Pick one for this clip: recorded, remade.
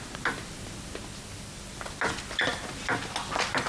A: recorded